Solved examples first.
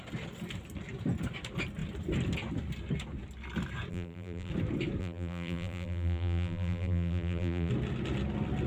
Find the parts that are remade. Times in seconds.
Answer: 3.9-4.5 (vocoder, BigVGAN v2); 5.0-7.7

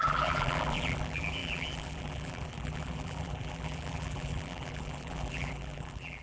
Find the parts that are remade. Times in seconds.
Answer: 0.0-6.2 (vocoder, BigVGAN v2)

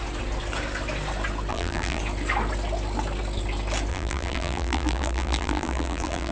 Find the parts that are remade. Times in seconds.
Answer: 1.5-2.0 (vocoder, BigVGAN v2); 3.9-6.3

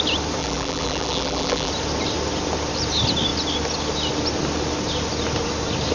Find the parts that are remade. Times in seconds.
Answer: 0.4-1.7 (vocoder, BigVGAN v2)